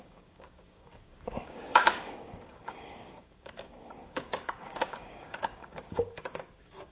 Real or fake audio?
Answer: fake